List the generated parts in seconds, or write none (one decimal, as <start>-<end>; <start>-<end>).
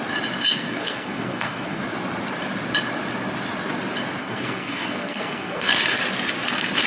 0.5-1.8; 4.2-5.7